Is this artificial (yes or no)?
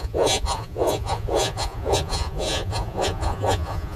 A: yes